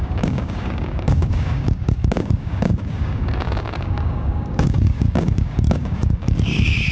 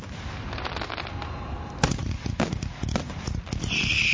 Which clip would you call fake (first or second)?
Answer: first